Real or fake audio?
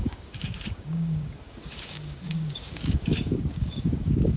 fake